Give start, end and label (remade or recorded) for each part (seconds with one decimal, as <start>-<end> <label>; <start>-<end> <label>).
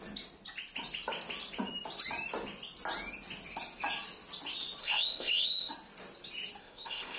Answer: 0.0-4.8 recorded; 4.8-5.7 remade; 5.7-6.6 recorded; 6.6-7.2 remade